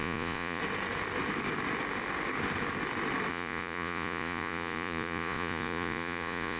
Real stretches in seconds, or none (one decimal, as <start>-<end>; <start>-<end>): 0.6-3.3